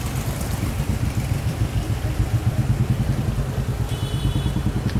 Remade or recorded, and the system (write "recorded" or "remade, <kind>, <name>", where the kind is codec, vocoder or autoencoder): remade, vocoder, BigVGAN v2